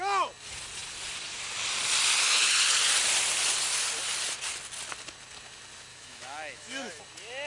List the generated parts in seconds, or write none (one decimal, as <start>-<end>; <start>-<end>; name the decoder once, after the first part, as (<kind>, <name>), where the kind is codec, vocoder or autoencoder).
5.9-7.0 (autoencoder, DAC-VAE)